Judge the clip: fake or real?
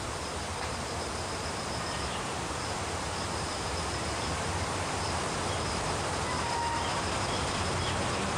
fake